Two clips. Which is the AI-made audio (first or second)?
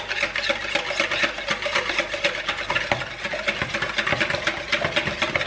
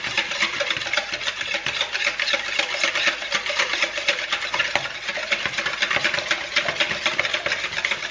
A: second